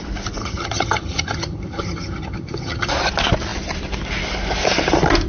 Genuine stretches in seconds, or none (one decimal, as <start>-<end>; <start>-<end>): 0.0-0.4; 2.9-5.3